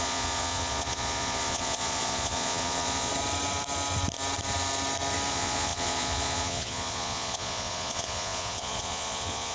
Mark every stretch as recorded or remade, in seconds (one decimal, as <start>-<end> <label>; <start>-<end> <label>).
0.0-3.1 remade; 3.1-5.3 recorded; 5.3-9.5 remade